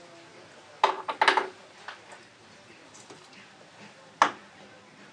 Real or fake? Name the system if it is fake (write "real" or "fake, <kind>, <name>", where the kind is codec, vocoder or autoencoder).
real